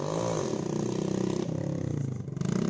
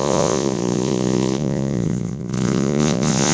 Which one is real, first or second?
first